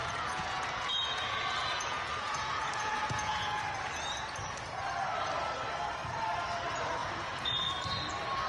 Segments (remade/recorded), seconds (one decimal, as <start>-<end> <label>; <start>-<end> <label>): 0.0-3.6 remade; 3.6-7.0 recorded; 7.0-7.8 remade; 7.8-8.5 recorded